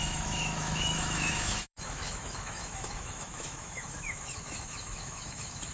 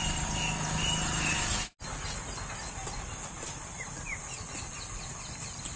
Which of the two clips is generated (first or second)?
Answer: first